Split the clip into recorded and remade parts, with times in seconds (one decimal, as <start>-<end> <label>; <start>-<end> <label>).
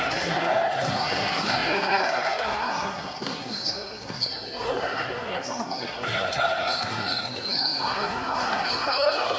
0.0-9.4 remade